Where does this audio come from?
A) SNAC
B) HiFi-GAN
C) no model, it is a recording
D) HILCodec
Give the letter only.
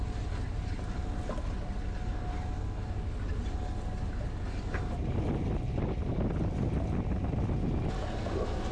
C